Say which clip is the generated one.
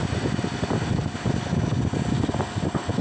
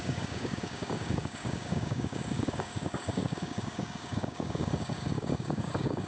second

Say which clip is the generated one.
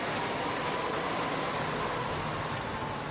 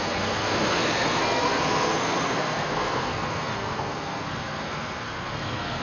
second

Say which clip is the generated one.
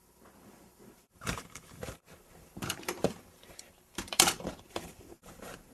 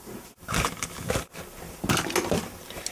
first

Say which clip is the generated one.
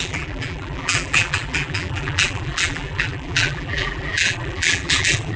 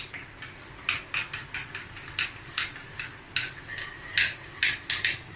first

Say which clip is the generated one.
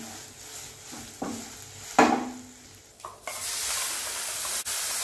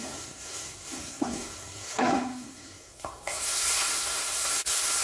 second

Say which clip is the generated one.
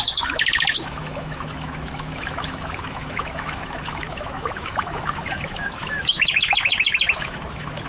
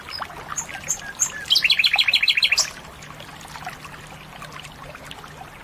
first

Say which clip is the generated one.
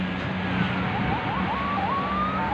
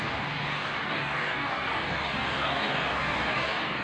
second